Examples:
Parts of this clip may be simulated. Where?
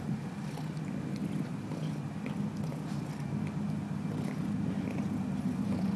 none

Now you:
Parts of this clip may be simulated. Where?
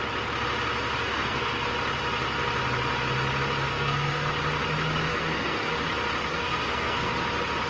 1.0-1.7 (codec, SNAC); 3.7-4.3; 5.1-5.7; 6.3-7.1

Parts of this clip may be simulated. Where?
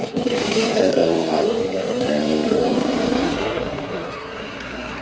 0.0-5.0 (codec, SNAC)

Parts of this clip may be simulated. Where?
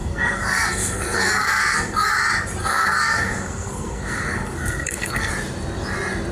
0.0-2.1 (codec, SNAC); 2.6-5.3